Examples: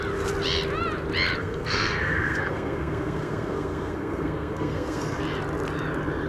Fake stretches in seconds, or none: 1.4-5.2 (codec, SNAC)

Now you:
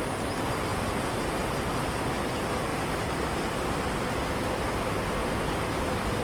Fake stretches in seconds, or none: 0.7-1.3 (vocoder, Vocos)